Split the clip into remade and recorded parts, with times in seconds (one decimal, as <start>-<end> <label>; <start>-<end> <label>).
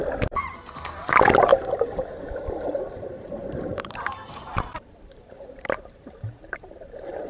0.0-0.8 recorded; 0.8-1.5 remade; 1.5-2.8 recorded; 2.8-7.3 remade